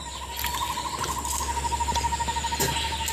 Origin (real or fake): real